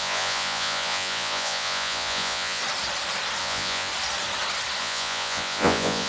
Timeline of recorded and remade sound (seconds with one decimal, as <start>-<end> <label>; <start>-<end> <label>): 0.0-2.6 remade; 2.6-3.4 recorded; 3.4-3.9 remade; 3.9-4.8 recorded; 4.8-6.1 remade